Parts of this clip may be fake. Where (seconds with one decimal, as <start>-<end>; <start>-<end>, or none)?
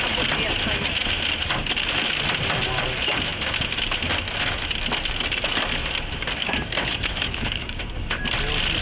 6.4-7.8